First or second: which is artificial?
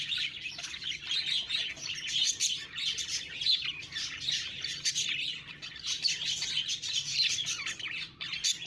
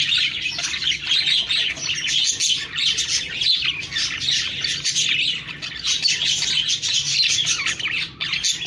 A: first